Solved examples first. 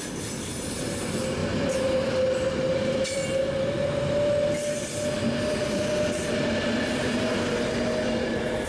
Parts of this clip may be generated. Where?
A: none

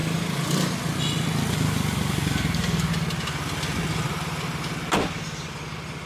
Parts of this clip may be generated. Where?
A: 1.5-2.9 (codec, DAC)

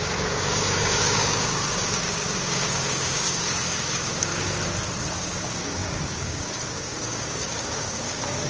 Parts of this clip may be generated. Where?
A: 0.0-4.3 (codec, DAC); 5.2-8.5

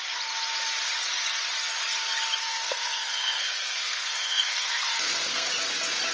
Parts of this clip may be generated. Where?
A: 2.4-5.5 (codec, SNAC)